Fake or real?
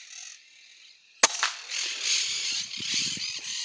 real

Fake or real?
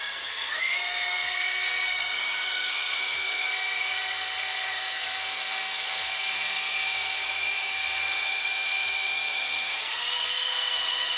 fake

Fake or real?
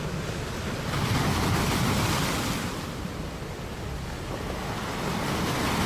real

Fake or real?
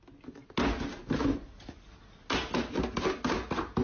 real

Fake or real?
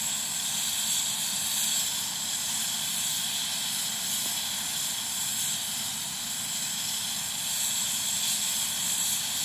real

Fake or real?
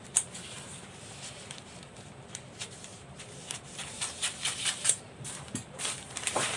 fake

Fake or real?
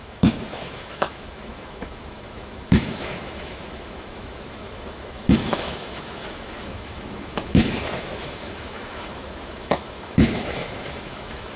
fake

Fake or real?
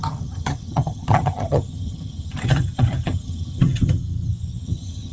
fake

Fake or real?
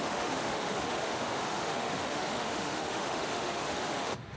fake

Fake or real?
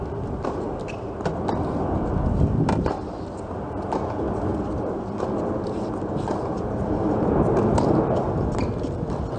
real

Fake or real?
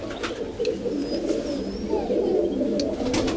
real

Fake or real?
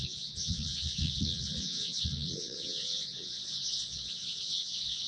fake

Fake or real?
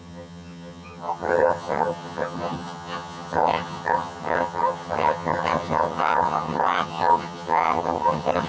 fake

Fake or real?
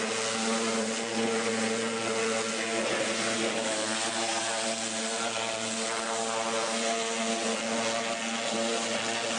real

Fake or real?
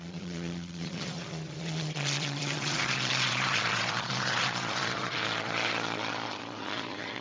fake